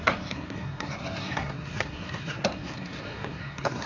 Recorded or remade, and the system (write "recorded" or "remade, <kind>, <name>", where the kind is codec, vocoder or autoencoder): remade, codec, SNAC